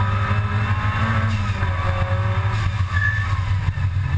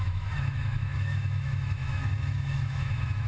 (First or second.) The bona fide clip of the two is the first